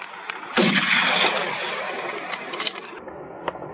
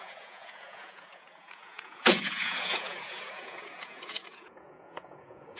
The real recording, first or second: first